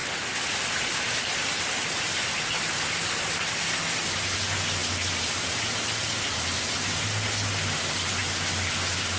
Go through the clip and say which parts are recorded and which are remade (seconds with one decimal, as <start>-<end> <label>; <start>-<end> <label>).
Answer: 0.0-9.2 recorded